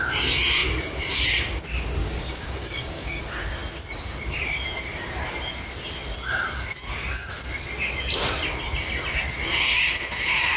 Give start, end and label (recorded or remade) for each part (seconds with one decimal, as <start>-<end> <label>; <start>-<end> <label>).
0.0-2.0 recorded; 2.0-3.2 remade; 3.2-10.6 recorded